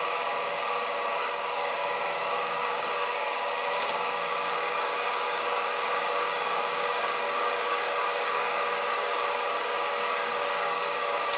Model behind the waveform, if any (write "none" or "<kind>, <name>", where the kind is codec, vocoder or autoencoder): codec, DAC